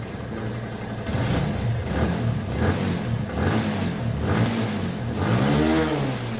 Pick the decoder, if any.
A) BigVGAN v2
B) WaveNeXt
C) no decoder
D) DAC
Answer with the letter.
C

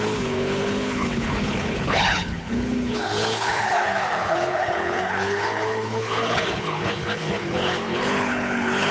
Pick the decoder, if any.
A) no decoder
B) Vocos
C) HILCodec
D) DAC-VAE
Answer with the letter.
C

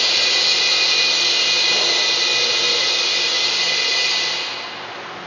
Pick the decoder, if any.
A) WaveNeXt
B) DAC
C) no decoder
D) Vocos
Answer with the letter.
C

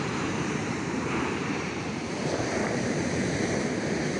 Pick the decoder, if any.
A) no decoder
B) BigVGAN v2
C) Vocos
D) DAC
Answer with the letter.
B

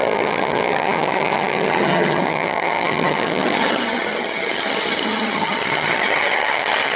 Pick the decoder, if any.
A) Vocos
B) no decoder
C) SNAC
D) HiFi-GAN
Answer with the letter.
D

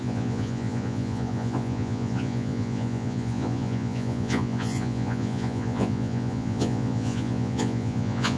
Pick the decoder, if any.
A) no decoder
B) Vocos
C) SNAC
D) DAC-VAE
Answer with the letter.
B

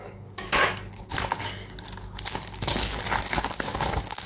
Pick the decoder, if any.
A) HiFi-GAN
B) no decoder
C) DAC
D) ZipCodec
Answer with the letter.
C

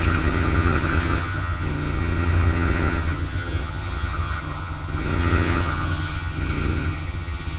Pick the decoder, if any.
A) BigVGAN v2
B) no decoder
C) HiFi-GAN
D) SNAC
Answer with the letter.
C